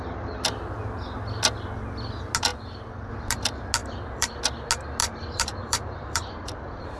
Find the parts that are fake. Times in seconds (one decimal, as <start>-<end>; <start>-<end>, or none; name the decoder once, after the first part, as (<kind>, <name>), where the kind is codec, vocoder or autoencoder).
3.8-4.4 (vocoder, BigVGAN v2); 5.0-7.0